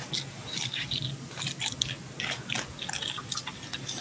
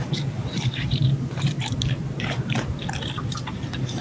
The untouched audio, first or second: first